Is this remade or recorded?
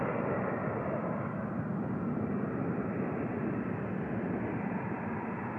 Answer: recorded